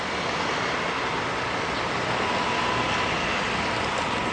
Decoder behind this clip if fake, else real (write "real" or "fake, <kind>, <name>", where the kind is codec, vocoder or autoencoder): fake, vocoder, BigVGAN v2